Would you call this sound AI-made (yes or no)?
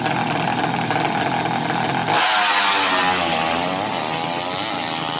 no